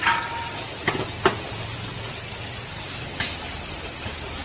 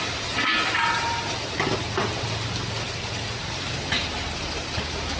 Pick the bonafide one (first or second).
second